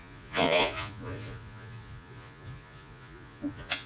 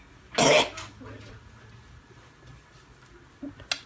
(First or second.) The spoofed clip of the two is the first